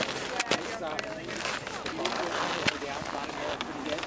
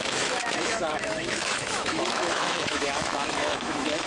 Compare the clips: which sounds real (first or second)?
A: first